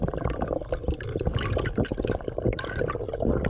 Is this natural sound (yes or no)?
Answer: yes